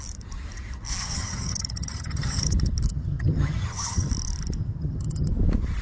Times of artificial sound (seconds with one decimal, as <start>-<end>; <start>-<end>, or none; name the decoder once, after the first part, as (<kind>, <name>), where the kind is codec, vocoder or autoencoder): 1.0-2.5 (vocoder, HiFi-GAN); 2.9-4.1; 4.6-5.3